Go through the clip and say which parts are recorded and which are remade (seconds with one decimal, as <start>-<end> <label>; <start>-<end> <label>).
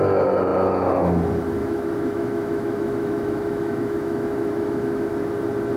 0.0-1.6 recorded; 1.6-5.1 remade; 5.1-5.8 recorded